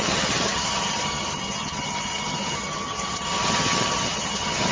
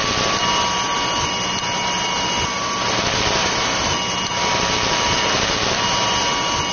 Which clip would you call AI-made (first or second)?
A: first